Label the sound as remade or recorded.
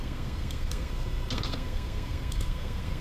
remade